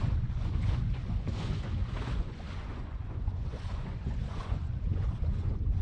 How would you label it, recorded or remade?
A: remade